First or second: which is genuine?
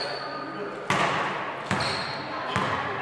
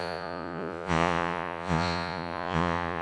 first